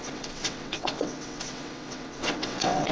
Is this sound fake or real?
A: fake